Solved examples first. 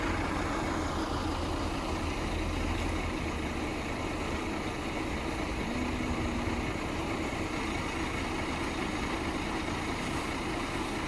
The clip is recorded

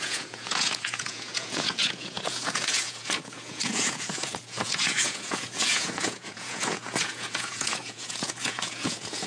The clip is remade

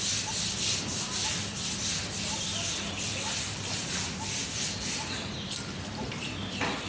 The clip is recorded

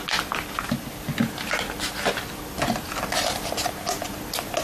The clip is recorded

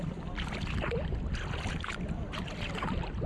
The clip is recorded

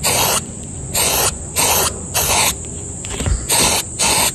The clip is remade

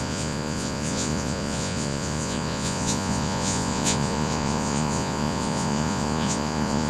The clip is remade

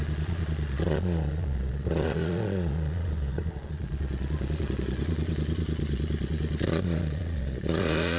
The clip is remade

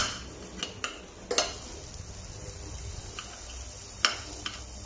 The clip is recorded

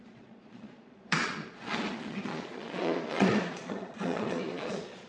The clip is remade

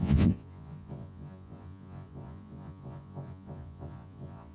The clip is remade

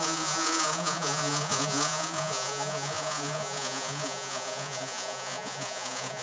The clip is remade